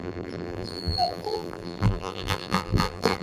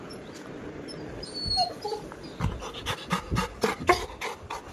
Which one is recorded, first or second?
second